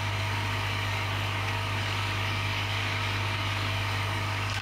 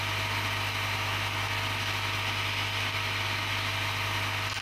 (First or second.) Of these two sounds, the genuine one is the second